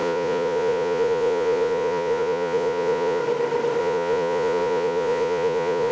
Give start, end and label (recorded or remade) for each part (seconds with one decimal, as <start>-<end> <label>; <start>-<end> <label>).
0.0-3.2 remade; 3.2-3.8 recorded; 3.8-5.9 remade